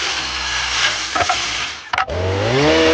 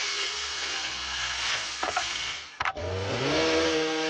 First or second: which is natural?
first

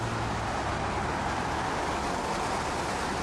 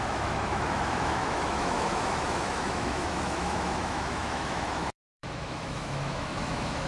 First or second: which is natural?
first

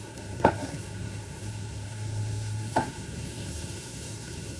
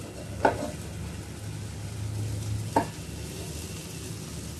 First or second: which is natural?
second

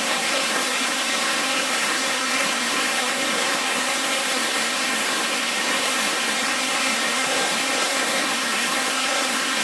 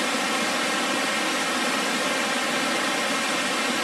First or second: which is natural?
second